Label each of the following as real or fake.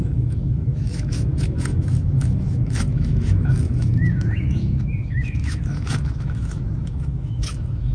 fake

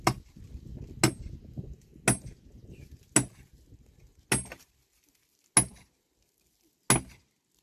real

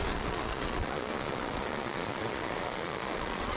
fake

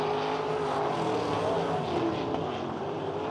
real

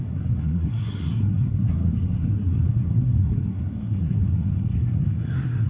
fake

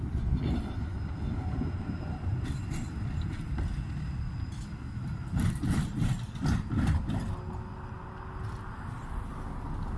real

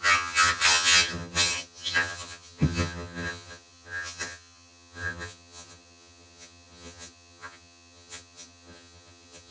fake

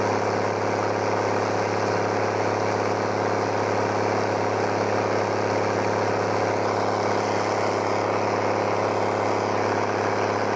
real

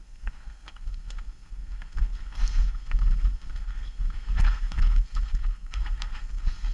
fake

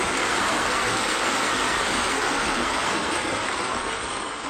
fake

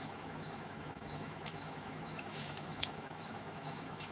fake